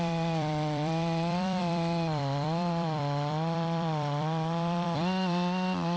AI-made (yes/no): yes